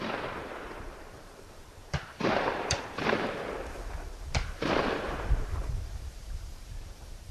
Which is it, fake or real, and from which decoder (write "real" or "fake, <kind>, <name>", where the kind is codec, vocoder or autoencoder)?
fake, vocoder, BigVGAN v2